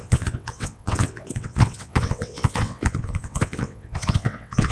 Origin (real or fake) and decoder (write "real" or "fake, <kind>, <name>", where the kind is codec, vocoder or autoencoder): fake, vocoder, WaveNeXt